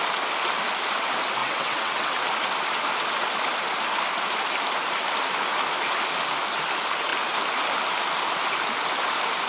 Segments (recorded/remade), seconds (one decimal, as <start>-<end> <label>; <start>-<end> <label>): 0.0-1.4 recorded; 1.4-2.2 remade; 2.2-9.5 recorded